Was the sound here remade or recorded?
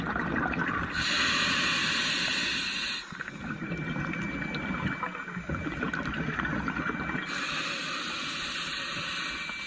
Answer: recorded